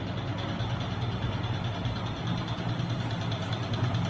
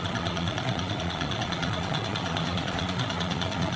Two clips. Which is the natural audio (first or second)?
first